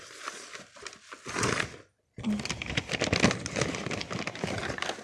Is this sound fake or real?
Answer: real